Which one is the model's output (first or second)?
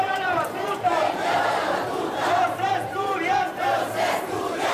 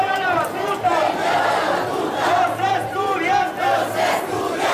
first